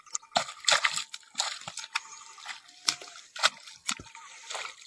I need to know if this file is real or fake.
real